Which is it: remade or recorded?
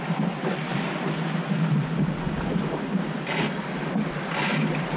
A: recorded